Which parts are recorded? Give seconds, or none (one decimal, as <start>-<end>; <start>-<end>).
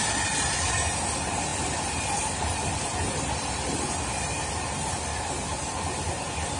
0.0-6.6